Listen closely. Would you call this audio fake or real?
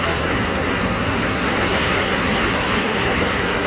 fake